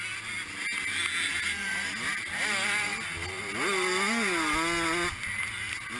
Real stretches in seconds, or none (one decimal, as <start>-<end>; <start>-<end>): 0.0-6.0